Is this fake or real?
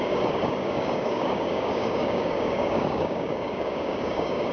fake